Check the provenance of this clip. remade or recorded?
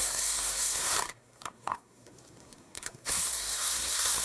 remade